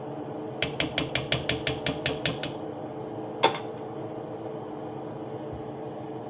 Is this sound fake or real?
real